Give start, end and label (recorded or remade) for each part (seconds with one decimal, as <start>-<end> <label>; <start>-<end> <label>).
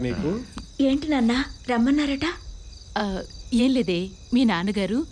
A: 0.0-5.1 recorded